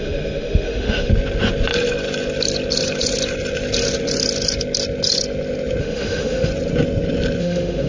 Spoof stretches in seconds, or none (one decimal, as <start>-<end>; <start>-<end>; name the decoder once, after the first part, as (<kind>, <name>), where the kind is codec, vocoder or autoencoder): 0.0-1.1 (autoencoder, DAC-VAE); 5.8-6.5; 7.4-7.9